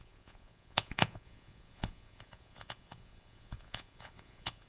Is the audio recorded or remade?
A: remade